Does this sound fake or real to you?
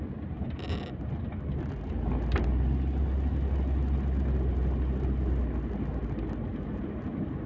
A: real